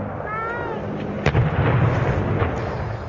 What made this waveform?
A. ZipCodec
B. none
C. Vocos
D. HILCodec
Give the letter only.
B